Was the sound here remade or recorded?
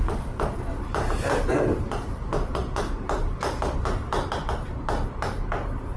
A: recorded